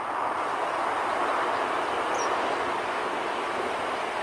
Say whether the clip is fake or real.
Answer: real